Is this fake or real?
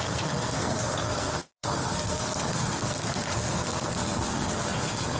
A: fake